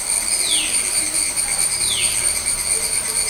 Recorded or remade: recorded